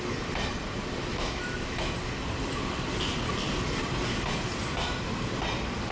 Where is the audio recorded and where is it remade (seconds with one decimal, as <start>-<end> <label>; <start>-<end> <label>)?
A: 0.0-1.1 recorded; 1.1-1.9 remade; 1.9-5.9 recorded